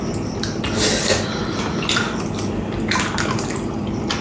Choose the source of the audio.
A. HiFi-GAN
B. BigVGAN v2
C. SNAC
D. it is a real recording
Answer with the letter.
D